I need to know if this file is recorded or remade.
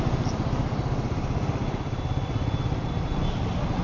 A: recorded